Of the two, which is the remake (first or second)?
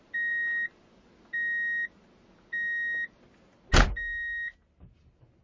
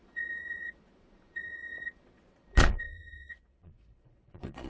second